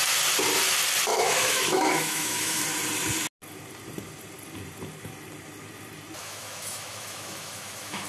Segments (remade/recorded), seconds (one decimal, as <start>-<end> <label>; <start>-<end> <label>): 0.0-1.1 recorded; 1.1-2.6 remade; 2.6-6.2 recorded; 6.2-8.1 remade